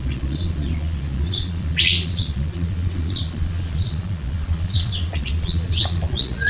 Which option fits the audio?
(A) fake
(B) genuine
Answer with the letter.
A